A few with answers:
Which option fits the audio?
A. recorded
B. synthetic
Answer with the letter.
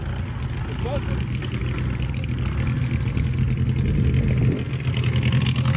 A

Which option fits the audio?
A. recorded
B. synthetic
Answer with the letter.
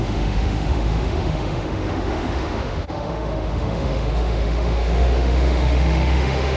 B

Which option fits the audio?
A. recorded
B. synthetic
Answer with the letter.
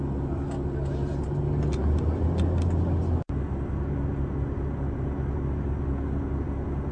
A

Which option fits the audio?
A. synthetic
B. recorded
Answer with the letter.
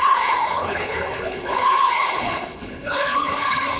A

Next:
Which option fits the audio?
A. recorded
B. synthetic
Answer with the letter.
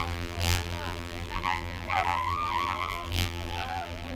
B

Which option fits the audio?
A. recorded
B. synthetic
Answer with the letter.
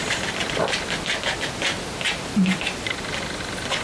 A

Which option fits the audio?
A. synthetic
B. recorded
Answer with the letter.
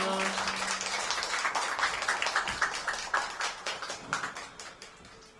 B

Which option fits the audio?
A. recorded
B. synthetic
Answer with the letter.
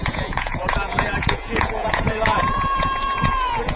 B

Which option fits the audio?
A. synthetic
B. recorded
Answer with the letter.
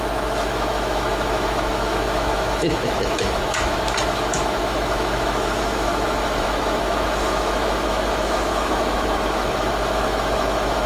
A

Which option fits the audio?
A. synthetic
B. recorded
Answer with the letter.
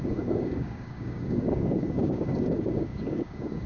A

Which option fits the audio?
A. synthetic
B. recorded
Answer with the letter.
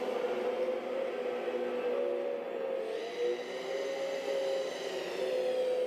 B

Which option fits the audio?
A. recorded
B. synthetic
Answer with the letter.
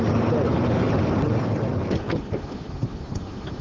A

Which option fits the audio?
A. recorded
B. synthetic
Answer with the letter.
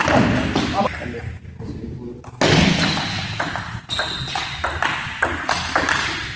A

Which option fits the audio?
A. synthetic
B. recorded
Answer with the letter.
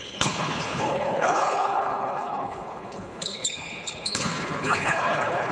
A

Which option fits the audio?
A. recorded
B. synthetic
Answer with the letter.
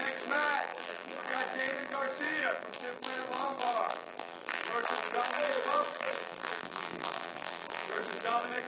B